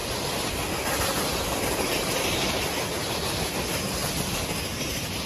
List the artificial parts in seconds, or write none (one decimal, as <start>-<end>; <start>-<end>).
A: none